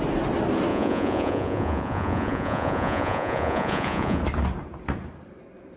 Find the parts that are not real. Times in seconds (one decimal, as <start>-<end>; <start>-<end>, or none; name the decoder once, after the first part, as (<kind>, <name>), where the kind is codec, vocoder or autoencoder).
0.7-4.2 (vocoder, Vocos)